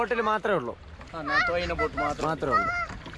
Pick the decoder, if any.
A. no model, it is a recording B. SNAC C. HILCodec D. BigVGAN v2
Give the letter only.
A